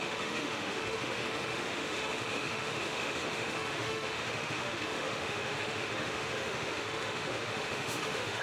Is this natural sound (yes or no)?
no